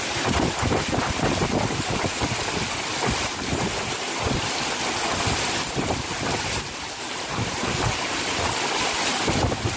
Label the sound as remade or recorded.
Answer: recorded